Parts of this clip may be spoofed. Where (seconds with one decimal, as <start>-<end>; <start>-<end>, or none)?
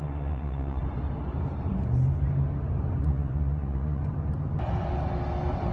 0.0-0.8; 3.0-4.0